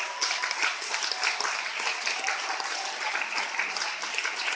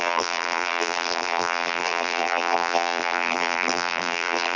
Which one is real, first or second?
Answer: first